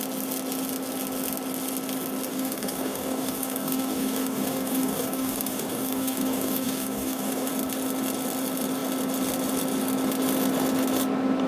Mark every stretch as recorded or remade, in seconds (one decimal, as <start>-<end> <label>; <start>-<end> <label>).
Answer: 0.0-2.3 recorded; 2.3-7.5 remade; 7.5-11.5 recorded